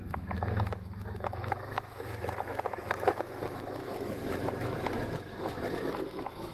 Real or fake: fake